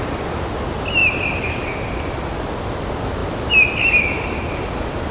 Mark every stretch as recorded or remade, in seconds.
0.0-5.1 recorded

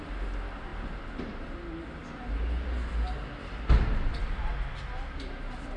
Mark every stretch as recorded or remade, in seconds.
0.0-5.8 recorded

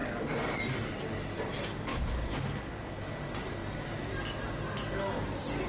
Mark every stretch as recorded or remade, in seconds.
0.0-1.0 remade; 1.0-5.7 recorded